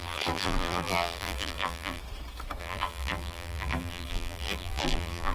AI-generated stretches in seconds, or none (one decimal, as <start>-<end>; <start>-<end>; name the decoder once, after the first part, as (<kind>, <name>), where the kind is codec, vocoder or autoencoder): 0.0-2.0 (vocoder, BigVGAN v2); 2.6-5.3